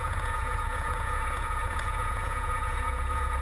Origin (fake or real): fake